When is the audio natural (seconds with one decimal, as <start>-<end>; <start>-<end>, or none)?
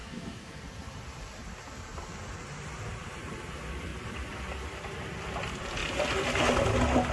0.6-7.1